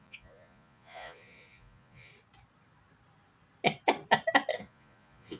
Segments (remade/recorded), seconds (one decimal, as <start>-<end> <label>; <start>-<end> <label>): 0.0-2.1 remade; 2.1-4.6 recorded; 4.6-5.4 remade